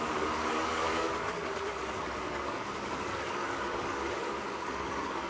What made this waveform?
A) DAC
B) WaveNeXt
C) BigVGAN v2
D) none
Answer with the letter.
A